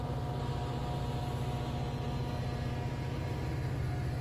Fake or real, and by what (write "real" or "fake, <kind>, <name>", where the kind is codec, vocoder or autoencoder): real